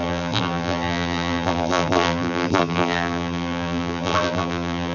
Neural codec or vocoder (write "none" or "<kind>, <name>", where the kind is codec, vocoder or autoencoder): vocoder, BigVGAN v2